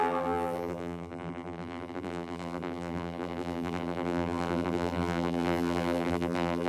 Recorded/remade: remade